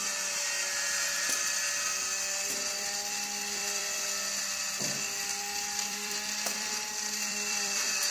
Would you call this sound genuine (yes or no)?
no